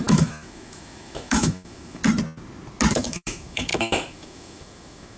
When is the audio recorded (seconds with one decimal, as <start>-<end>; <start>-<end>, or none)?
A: 2.0-2.9